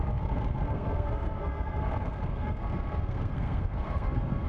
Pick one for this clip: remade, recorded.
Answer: remade